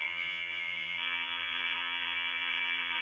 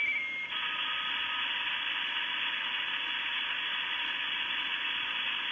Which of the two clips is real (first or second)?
second